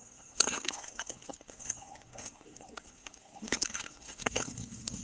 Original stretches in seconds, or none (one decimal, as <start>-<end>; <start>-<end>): none